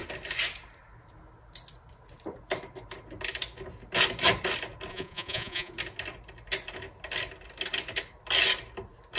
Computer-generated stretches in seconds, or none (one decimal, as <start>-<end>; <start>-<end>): 4.9-5.7

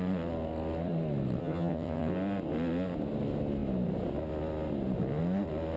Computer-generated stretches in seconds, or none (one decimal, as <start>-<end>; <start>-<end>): 1.4-2.1

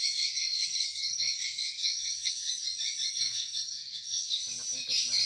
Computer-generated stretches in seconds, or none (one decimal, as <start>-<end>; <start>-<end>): 0.0-2.5; 3.1-4.4